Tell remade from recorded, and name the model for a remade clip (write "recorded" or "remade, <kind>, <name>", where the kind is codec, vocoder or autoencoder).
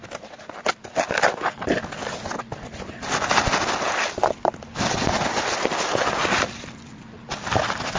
recorded